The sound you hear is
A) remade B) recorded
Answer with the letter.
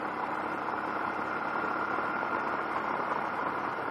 A